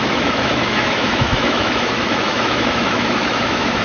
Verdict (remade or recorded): remade